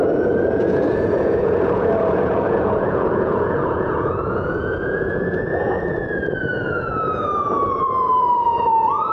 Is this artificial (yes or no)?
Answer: yes